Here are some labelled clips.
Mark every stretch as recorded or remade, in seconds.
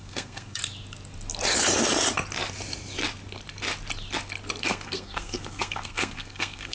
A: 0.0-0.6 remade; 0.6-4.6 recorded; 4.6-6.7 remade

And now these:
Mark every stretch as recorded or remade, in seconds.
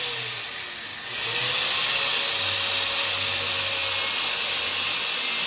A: 0.0-5.5 recorded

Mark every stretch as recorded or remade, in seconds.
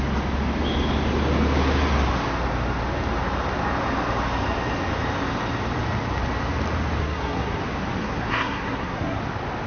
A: 0.0-7.0 recorded; 7.0-7.6 remade; 7.6-8.0 recorded; 8.0-9.2 remade; 9.2-9.7 recorded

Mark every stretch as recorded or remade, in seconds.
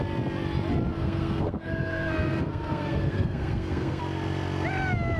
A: 0.0-0.9 recorded; 0.9-4.0 remade; 4.0-5.2 recorded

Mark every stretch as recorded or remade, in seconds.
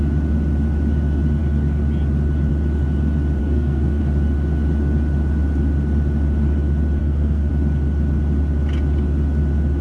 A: 0.0-3.4 recorded; 3.4-4.0 remade; 4.0-7.0 recorded; 7.0-7.5 remade; 7.5-9.8 recorded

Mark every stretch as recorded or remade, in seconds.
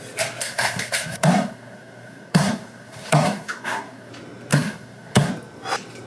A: 0.0-0.4 recorded; 0.4-4.1 remade; 4.1-4.5 recorded; 4.5-5.3 remade; 5.3-6.1 recorded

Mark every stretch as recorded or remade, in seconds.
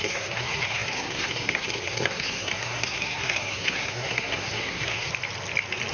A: 0.0-5.1 remade; 5.1-5.9 recorded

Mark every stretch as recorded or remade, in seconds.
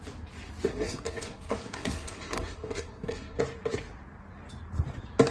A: 0.0-0.7 recorded; 0.7-3.4 remade; 3.4-5.3 recorded